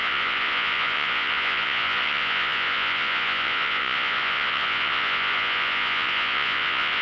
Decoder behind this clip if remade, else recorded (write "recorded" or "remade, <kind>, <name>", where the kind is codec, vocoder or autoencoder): remade, vocoder, Vocos